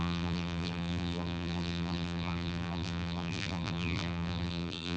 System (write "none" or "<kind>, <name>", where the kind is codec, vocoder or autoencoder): vocoder, BigVGAN v2